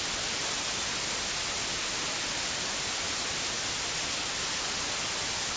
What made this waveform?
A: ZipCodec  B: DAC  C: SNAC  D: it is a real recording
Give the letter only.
D